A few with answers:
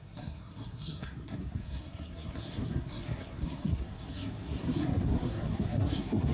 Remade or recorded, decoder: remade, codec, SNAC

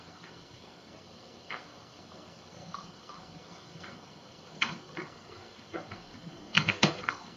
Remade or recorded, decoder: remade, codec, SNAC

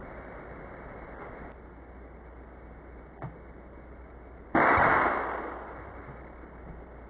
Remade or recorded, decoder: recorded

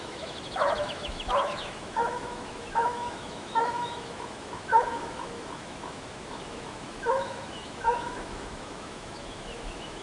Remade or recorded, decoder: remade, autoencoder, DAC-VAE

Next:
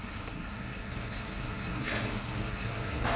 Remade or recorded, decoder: remade, codec, SNAC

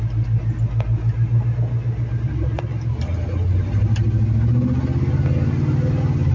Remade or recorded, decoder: recorded